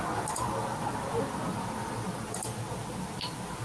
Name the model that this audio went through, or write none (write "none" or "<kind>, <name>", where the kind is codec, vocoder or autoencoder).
none